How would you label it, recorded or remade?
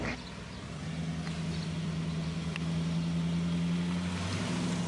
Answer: recorded